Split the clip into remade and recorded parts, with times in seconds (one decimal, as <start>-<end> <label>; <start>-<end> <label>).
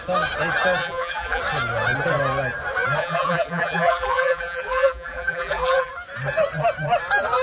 0.0-0.8 recorded; 0.8-1.4 remade; 1.4-3.0 recorded; 3.0-5.9 remade; 5.9-7.4 recorded